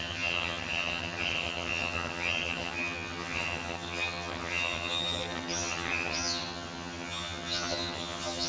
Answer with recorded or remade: remade